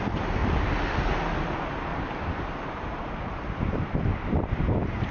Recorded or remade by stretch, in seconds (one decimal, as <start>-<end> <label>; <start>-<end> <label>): 0.0-0.4 recorded; 0.4-1.1 remade; 1.1-1.9 recorded; 1.9-5.1 remade